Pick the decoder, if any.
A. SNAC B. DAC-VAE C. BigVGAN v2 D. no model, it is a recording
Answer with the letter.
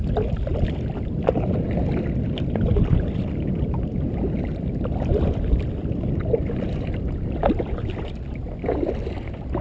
C